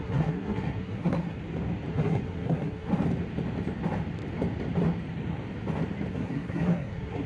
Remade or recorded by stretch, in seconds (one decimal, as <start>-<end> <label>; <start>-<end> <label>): 0.0-1.4 remade; 1.4-1.9 recorded; 1.9-2.9 remade; 2.9-6.1 recorded; 6.1-7.3 remade